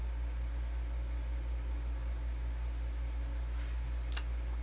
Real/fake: real